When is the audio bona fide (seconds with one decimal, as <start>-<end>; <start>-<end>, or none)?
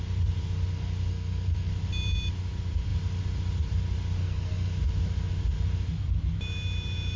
0.0-1.1; 1.7-4.2; 4.7-7.2